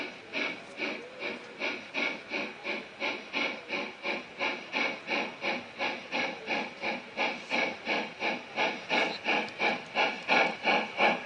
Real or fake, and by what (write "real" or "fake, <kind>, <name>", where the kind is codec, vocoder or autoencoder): real